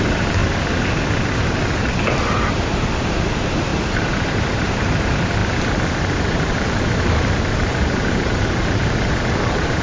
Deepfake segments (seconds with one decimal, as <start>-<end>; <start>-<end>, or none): 0.0-0.4; 1.1-9.8